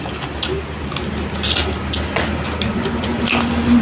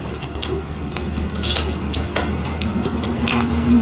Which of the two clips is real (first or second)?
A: first